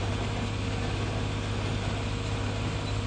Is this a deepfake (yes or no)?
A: no